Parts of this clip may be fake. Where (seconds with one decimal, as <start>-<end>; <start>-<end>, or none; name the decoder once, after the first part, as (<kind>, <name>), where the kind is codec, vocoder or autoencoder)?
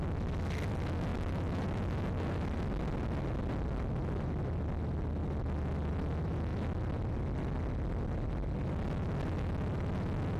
none